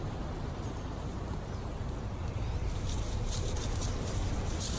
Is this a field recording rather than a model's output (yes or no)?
no